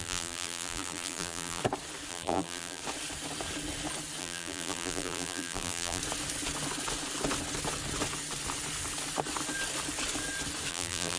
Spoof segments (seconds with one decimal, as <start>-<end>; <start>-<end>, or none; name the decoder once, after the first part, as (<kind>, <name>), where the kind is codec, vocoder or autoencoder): 0.0-1.6 (vocoder, BigVGAN v2); 2.1-2.8; 4.2-6.0; 10.7-11.2

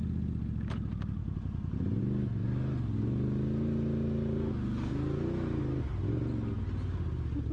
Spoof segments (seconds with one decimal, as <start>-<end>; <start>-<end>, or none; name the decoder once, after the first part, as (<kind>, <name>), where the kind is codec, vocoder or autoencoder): none

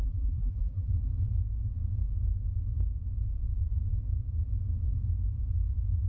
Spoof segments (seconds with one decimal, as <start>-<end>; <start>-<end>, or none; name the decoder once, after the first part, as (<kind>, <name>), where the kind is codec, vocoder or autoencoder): 0.0-0.9 (vocoder, BigVGAN v2)